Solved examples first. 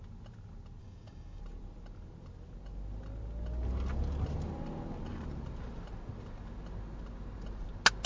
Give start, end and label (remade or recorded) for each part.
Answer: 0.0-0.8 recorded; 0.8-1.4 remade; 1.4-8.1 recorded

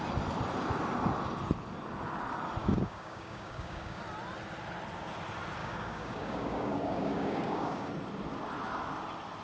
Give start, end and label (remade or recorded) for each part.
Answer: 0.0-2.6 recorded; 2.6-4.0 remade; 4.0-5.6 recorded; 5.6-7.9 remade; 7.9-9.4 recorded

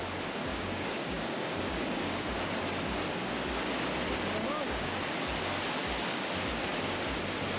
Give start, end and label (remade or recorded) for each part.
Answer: 0.0-0.5 recorded; 0.5-2.2 remade; 2.2-4.4 recorded; 4.4-5.0 remade; 5.0-7.6 recorded